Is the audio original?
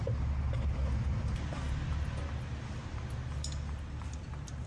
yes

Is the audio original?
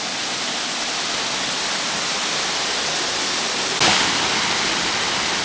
yes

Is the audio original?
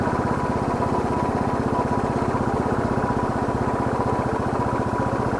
yes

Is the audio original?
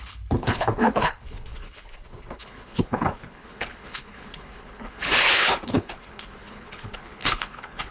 no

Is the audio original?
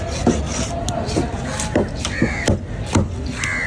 yes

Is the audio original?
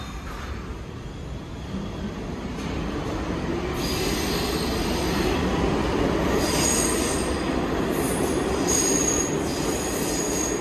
yes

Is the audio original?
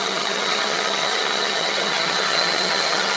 no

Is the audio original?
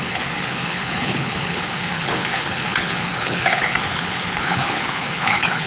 no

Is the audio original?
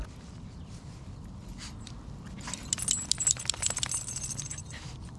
yes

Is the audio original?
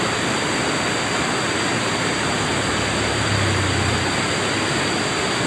yes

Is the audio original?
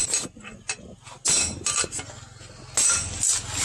yes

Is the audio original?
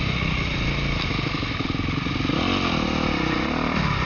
yes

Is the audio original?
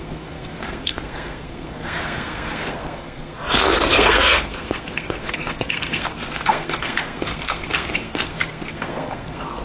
no